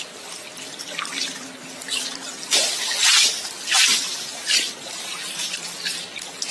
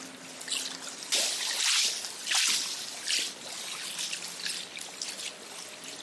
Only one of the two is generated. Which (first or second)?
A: first